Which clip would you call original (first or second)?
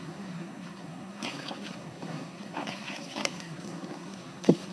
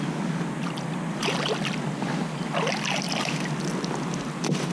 second